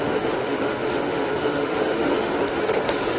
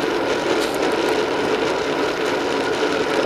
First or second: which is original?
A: second